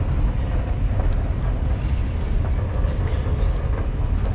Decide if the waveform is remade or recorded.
recorded